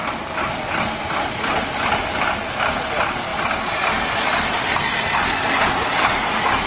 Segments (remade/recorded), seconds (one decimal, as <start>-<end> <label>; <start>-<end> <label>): 0.0-6.7 recorded

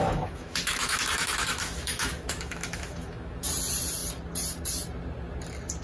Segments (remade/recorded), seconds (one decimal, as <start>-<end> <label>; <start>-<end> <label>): 0.0-3.5 remade; 3.5-5.8 recorded

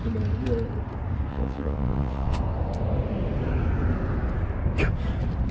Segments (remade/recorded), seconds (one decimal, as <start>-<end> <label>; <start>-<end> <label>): 0.0-1.3 recorded; 1.3-2.4 remade; 2.4-5.5 recorded

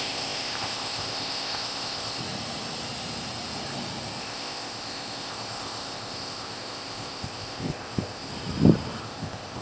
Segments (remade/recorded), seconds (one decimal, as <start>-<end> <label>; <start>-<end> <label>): 0.0-2.2 remade; 2.2-4.2 recorded; 4.2-8.3 remade; 8.3-9.0 recorded; 9.0-9.6 remade

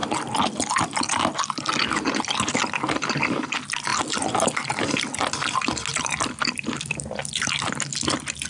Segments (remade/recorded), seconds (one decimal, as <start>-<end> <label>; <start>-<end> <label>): 0.0-8.5 recorded